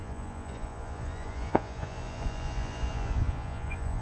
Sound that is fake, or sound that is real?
fake